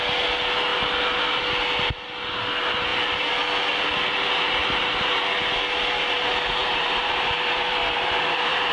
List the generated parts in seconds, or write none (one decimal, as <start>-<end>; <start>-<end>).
6.6-8.7